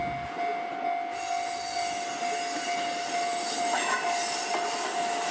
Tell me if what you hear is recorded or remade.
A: recorded